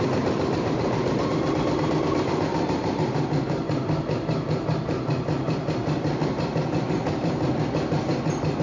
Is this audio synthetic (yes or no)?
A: yes